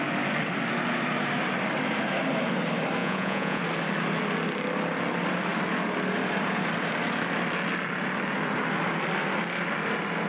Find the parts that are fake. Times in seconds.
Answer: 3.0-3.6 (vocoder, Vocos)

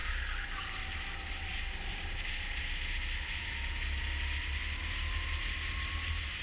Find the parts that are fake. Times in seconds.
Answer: none

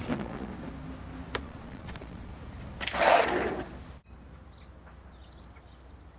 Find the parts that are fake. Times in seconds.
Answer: 0.0-0.5 (vocoder, Vocos); 1.4-2.3